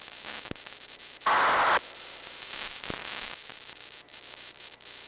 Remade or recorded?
recorded